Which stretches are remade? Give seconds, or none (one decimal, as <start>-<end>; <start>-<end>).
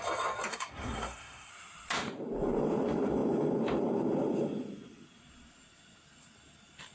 0.5-1.5